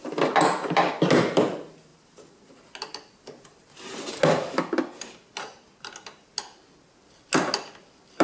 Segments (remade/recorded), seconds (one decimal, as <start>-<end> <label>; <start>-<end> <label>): 0.0-8.2 recorded